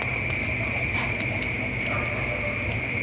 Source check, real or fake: real